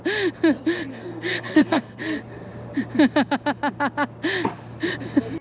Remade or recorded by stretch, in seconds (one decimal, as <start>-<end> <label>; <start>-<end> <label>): 0.0-0.9 recorded; 0.9-2.0 remade; 2.0-5.4 recorded